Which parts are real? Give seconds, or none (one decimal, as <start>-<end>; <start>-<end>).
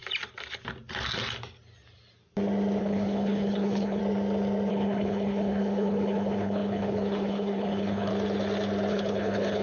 0.0-2.8; 4.0-4.7; 8.1-8.9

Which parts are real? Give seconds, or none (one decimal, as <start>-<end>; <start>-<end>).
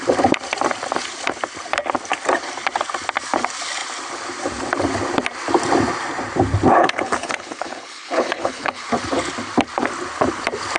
0.0-6.8; 8.9-10.8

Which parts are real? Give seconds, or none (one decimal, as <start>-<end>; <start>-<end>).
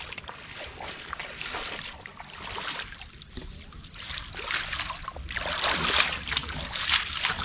0.0-7.4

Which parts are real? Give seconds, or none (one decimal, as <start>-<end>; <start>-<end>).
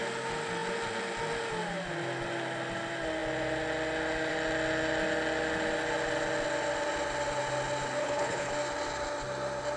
0.0-8.0; 8.5-9.8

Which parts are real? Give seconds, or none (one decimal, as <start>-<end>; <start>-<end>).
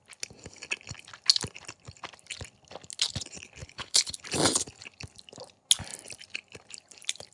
0.0-3.6; 4.2-7.3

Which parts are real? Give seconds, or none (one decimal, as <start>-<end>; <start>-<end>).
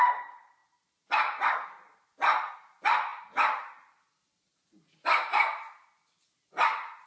0.0-7.1